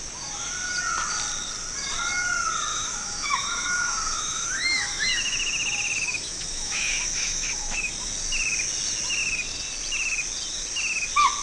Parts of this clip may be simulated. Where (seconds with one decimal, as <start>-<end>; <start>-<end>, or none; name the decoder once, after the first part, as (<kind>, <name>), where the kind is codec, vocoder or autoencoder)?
2.7-7.9 (autoencoder, DAC-VAE)